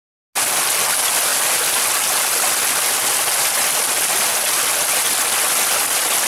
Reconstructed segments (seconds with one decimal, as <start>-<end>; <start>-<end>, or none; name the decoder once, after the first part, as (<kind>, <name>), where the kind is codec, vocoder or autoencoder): none